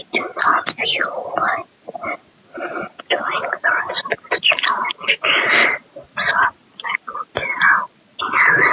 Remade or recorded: recorded